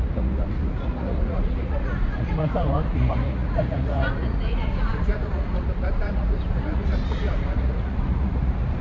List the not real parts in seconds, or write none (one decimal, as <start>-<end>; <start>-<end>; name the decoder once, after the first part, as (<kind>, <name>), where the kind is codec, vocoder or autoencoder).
0.0-8.8 (vocoder, Vocos)